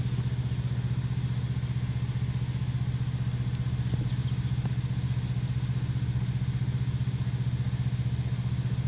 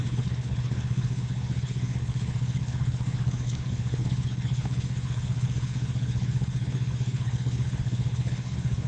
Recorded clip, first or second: first